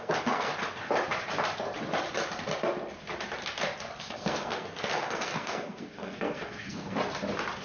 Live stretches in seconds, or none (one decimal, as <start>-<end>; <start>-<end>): 0.5-4.0; 7.0-7.6